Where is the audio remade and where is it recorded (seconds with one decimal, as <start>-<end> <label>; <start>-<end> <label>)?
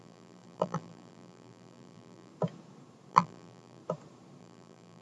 0.0-2.3 remade; 2.3-3.1 recorded; 3.1-3.8 remade; 3.8-4.4 recorded; 4.4-5.0 remade